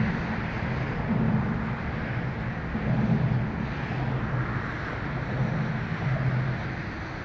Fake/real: real